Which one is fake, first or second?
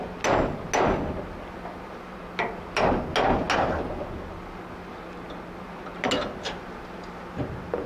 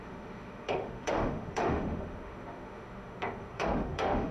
second